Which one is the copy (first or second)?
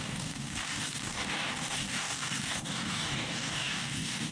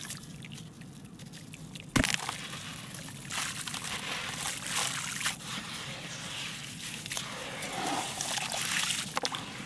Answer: first